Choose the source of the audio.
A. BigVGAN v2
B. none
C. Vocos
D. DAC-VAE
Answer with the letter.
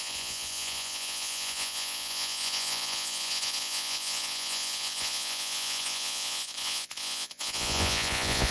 C